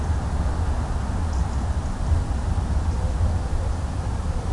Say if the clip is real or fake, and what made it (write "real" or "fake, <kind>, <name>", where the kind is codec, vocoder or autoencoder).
real